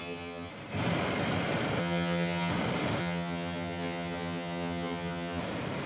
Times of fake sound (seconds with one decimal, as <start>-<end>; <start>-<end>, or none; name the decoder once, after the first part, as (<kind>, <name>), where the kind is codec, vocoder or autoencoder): 0.0-0.5 (vocoder, HiFi-GAN); 1.8-2.5; 3.0-5.4